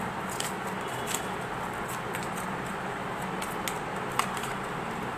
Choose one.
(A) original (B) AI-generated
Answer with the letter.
A